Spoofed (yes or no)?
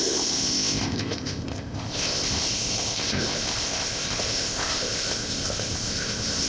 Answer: yes